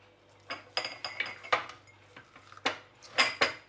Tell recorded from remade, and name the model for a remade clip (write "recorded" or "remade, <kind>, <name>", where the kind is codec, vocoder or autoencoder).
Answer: recorded